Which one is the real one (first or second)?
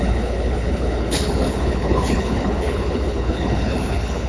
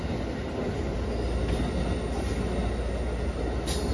second